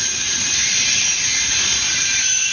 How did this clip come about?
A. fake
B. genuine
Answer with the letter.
A